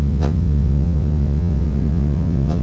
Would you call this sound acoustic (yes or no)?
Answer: no